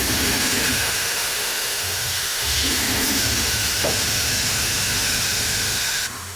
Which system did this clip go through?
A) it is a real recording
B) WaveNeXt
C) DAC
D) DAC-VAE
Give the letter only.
D